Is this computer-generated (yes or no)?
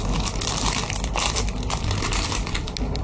no